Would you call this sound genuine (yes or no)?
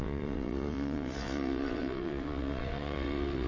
no